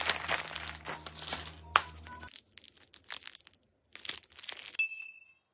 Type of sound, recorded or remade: recorded